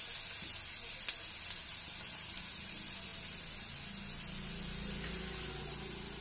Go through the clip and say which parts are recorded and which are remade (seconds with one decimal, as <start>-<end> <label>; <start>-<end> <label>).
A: 0.0-1.7 recorded; 1.7-2.7 remade; 2.7-6.2 recorded